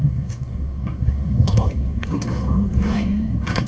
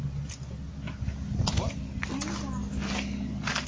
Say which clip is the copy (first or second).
first